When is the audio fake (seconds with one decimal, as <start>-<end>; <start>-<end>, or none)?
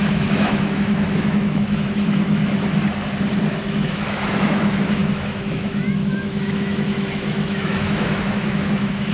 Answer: 0.0-2.4; 3.5-9.1